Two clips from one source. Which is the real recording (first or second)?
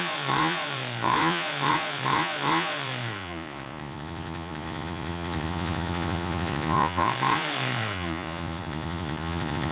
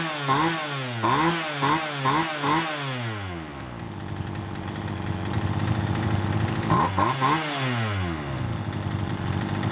second